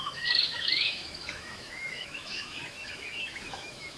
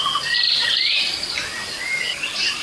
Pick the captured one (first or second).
second